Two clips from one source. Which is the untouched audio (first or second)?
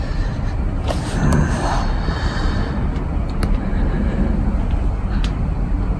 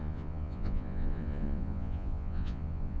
first